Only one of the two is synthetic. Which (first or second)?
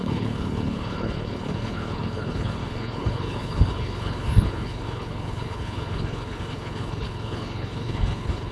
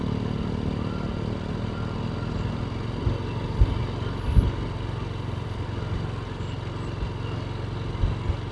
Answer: first